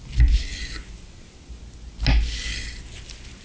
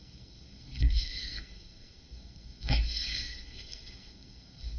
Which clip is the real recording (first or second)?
first